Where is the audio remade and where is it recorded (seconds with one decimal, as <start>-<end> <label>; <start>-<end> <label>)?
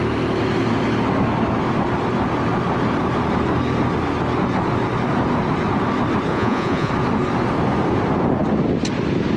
0.0-6.3 recorded; 6.3-6.9 remade; 6.9-9.4 recorded